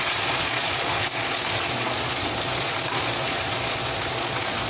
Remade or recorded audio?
remade